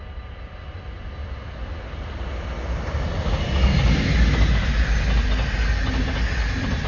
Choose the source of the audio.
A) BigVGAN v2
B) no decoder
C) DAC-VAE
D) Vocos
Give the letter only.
B